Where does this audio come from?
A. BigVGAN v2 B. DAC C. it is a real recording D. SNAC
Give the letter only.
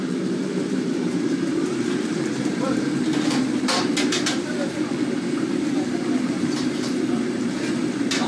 A